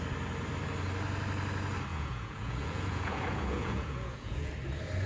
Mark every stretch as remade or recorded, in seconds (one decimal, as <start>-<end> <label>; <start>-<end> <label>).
0.0-1.9 recorded; 1.9-4.5 remade; 4.5-5.1 recorded